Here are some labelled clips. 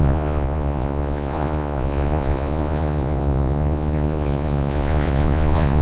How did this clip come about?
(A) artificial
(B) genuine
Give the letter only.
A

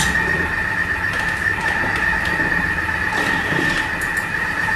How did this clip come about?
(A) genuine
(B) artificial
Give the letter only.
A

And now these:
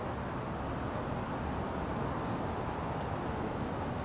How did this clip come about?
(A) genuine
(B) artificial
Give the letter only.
A